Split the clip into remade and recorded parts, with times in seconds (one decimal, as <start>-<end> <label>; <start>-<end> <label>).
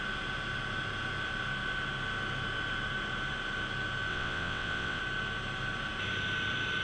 0.0-4.1 recorded; 4.1-5.0 remade; 5.0-6.8 recorded